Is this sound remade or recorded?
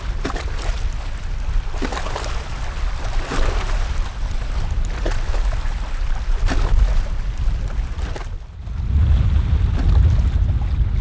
recorded